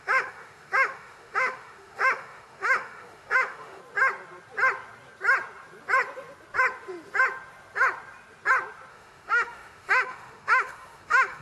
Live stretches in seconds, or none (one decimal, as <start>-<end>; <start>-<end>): 3.8-8.9